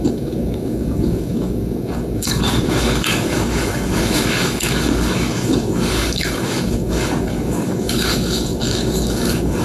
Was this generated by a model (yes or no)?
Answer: yes